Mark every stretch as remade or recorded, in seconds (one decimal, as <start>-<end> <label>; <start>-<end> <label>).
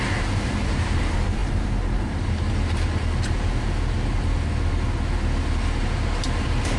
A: 0.0-6.8 recorded